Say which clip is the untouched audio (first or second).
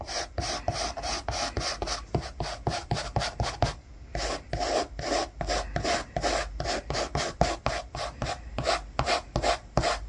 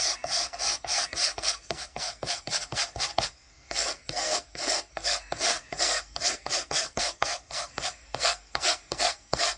first